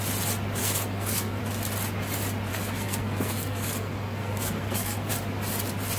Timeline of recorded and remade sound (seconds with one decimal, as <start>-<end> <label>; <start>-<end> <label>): 0.0-0.6 recorded; 0.6-1.4 remade; 1.4-2.5 recorded; 2.5-5.1 remade; 5.1-6.0 recorded